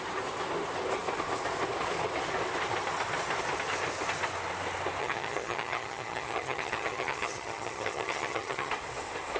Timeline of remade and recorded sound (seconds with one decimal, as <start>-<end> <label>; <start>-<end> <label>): 0.0-5.0 recorded; 5.0-8.7 remade; 8.7-9.4 recorded